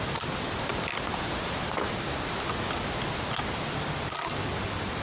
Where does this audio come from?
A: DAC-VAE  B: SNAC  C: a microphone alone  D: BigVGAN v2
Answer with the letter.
C